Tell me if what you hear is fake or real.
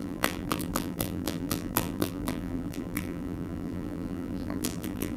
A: fake